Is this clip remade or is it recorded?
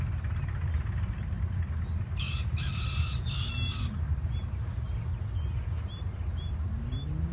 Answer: recorded